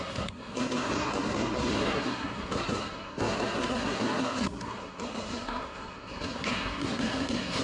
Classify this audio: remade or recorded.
remade